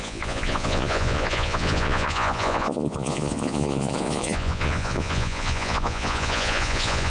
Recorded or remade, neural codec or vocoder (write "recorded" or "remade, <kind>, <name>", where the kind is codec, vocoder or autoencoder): remade, vocoder, Vocos